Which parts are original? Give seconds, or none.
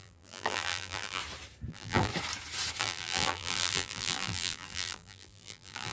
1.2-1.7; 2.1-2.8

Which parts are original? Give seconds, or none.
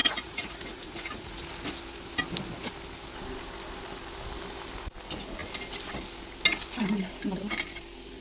1.4-8.2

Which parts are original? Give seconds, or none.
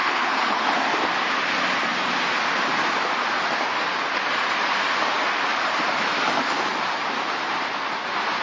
0.7-8.4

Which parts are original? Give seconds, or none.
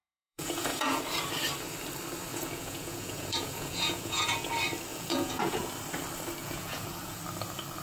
1.0-2.3; 4.5-4.9; 5.7-6.4; 7.2-7.8